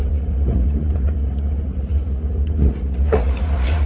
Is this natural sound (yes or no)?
no